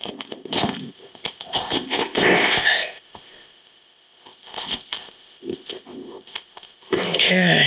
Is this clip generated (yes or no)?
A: yes